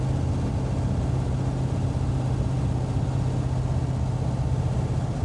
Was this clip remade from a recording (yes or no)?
no